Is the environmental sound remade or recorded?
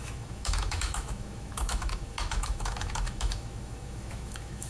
remade